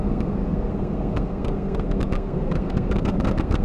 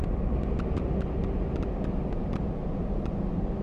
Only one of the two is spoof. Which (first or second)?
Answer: first